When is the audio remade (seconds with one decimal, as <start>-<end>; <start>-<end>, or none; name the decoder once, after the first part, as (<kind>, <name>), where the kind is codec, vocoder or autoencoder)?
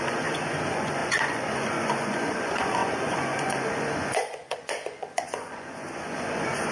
0.0-6.7 (vocoder, Vocos)